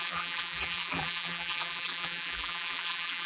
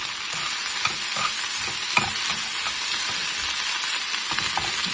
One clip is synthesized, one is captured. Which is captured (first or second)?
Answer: second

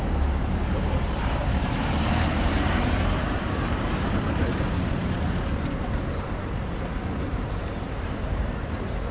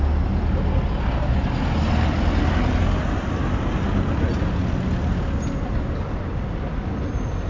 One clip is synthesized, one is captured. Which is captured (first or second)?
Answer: second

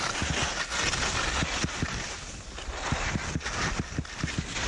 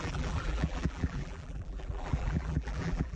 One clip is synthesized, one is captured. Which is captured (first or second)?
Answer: first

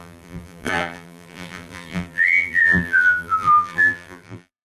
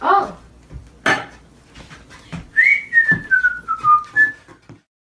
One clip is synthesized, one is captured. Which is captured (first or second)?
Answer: second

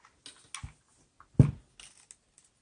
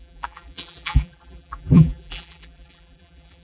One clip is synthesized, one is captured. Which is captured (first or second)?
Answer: first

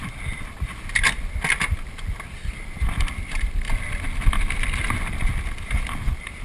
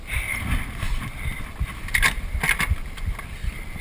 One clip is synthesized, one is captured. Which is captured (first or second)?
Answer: first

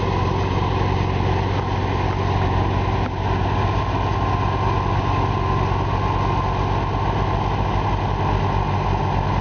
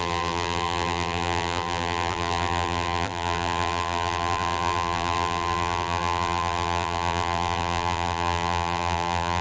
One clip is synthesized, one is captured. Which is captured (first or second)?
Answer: first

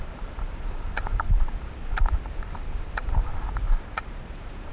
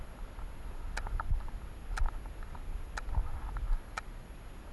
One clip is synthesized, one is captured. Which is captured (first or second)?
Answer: second